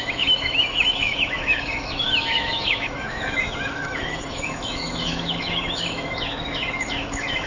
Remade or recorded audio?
remade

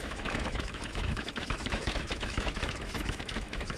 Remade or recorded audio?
remade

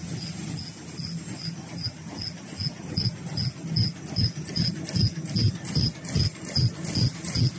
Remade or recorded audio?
recorded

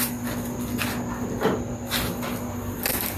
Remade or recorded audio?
recorded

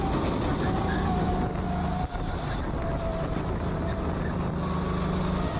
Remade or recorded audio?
recorded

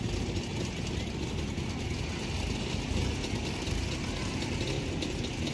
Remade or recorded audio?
recorded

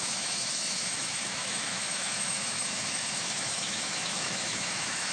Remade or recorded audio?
remade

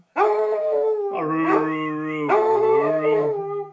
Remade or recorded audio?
remade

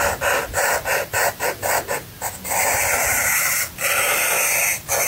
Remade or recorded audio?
recorded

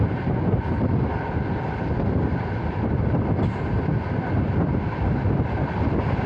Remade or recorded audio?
recorded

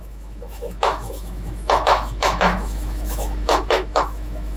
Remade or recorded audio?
remade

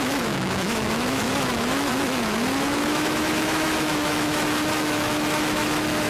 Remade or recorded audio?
remade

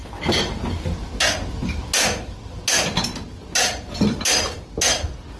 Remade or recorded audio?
recorded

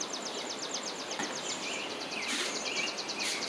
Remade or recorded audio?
recorded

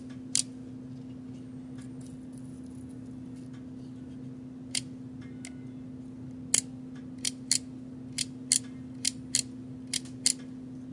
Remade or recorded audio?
recorded